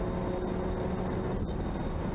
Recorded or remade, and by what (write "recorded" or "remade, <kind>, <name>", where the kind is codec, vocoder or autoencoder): recorded